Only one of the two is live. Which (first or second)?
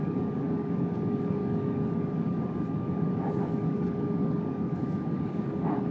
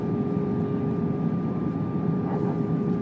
second